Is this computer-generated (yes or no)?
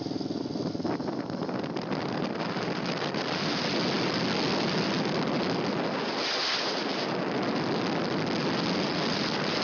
no